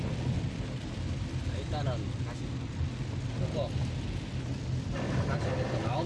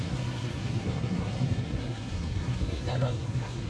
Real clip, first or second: first